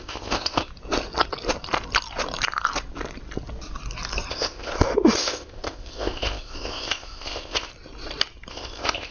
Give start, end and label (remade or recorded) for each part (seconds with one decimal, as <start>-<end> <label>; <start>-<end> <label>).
0.0-0.7 remade; 0.7-4.3 recorded; 4.3-4.7 remade; 4.7-5.2 recorded; 5.2-7.7 remade; 7.7-8.5 recorded; 8.5-9.1 remade